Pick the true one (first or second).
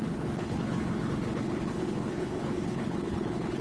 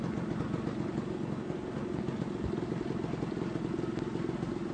second